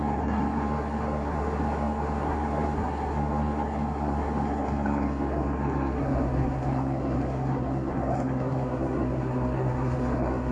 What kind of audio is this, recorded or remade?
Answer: remade